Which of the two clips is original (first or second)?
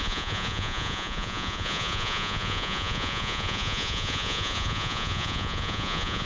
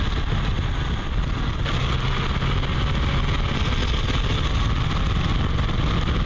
second